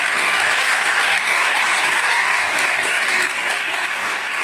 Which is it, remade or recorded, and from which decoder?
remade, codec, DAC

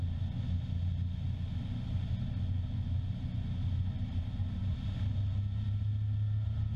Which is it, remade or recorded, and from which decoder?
recorded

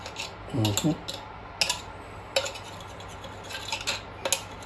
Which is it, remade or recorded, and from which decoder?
recorded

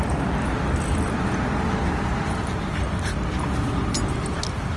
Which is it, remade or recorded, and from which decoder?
recorded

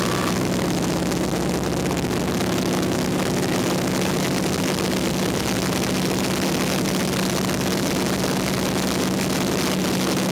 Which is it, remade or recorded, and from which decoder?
recorded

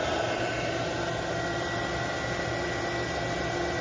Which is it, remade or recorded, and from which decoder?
recorded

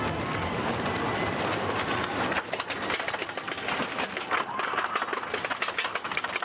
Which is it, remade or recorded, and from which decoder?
recorded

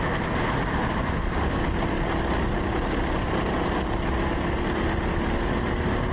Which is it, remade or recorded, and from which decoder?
recorded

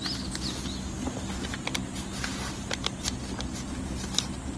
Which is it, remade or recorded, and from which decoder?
recorded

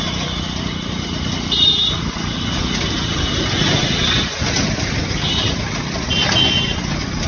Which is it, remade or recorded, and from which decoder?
recorded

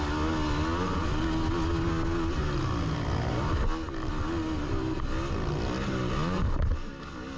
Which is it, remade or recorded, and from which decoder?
recorded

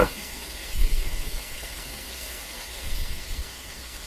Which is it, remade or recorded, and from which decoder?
remade, codec, SNAC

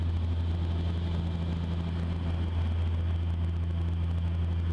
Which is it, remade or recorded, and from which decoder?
recorded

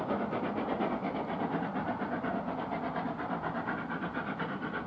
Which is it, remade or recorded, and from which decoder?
recorded